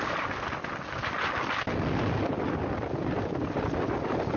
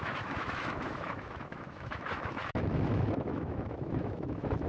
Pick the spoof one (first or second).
second